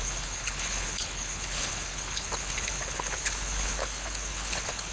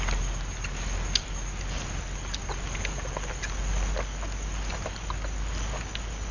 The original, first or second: second